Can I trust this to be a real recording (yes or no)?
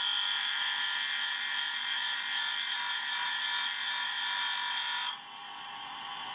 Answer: yes